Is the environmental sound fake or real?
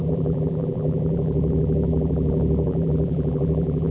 fake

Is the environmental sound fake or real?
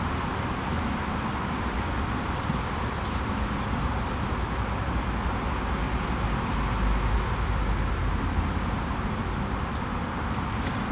real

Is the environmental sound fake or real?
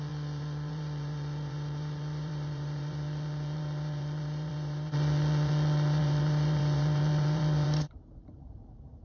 fake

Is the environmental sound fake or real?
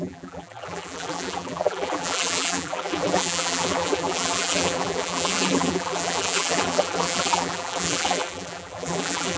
fake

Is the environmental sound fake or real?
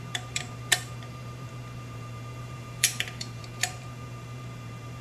fake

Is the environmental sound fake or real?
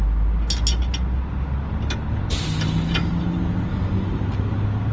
real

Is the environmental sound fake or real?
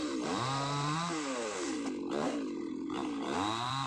real